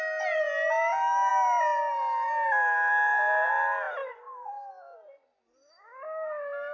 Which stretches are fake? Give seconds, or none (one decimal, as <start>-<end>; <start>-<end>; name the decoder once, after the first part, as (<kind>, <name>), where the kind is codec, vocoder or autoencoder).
none